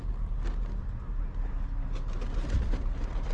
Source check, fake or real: real